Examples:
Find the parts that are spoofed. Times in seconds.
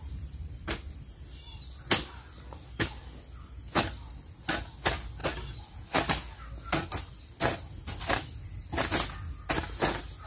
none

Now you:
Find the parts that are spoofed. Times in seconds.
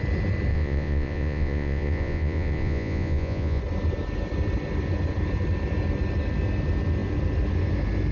0.5-3.6 (vocoder, Vocos)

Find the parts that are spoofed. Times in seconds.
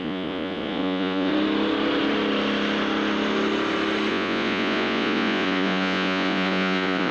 0.0-1.3 (vocoder, Vocos); 4.1-7.1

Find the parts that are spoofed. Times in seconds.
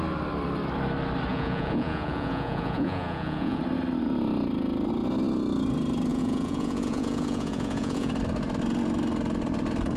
1.3-3.6 (vocoder, Vocos); 6.1-8.1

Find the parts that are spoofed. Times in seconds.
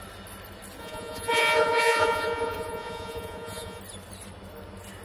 0.8-3.8 (vocoder, Vocos)